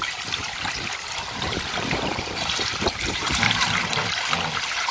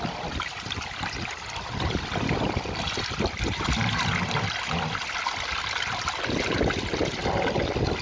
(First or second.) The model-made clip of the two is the first